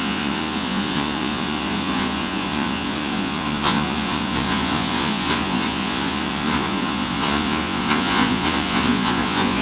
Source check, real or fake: fake